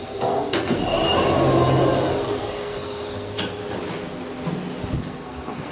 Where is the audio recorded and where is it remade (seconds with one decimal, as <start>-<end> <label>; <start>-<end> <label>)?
0.0-0.8 remade; 0.8-2.1 recorded; 2.1-3.6 remade; 3.6-5.0 recorded; 5.0-5.7 remade